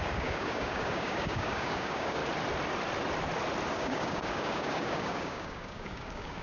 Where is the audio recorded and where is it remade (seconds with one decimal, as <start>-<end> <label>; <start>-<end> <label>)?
0.0-2.2 remade; 2.2-3.7 recorded; 3.7-6.4 remade